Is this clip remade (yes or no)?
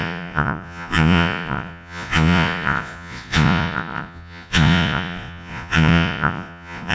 yes